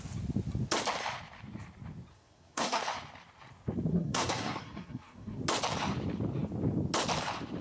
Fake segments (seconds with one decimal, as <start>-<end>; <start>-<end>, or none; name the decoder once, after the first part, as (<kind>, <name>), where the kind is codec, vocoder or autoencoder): 2.1-2.8 (codec, SNAC); 3.9-5.4

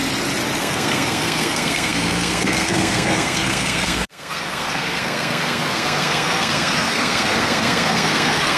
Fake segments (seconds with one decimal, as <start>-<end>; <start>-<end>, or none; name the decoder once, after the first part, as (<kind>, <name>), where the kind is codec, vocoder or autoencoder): 0.6-8.6 (codec, SNAC)

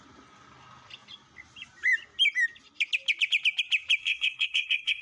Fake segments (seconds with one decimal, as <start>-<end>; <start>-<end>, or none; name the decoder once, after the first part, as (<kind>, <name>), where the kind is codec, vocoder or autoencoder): 4.0-5.0 (codec, SNAC)

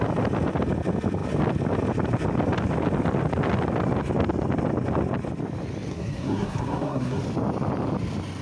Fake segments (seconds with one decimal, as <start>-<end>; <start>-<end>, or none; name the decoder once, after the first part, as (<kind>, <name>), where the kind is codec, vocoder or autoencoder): 5.9-7.2 (codec, SNAC)

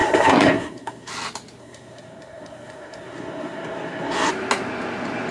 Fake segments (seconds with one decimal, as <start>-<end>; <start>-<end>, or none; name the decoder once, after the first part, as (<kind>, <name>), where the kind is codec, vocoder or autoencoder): 0.0-1.1 (codec, SNAC); 1.6-4.3

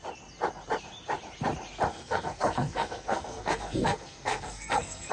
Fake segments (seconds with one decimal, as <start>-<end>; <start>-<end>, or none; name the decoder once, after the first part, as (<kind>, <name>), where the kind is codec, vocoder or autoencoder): 1.9-5.1 (codec, SNAC)